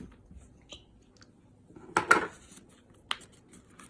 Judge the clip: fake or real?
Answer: real